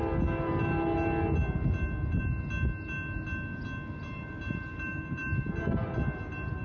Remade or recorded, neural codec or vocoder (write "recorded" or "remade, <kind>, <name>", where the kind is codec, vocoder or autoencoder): recorded